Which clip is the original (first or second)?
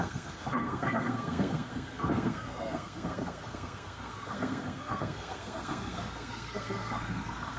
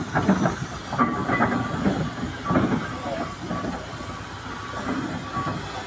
second